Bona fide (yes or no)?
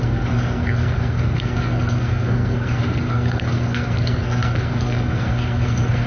no